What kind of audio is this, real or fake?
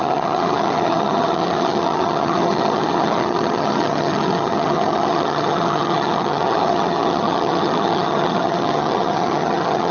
fake